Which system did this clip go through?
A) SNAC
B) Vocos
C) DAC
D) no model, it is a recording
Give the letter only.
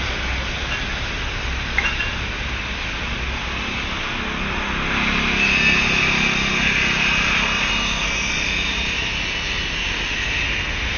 D